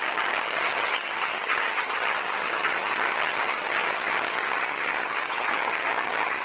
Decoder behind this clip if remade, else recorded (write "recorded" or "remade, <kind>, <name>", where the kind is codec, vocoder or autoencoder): remade, vocoder, HiFi-GAN